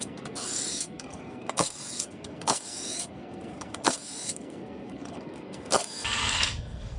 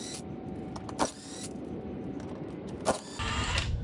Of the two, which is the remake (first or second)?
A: first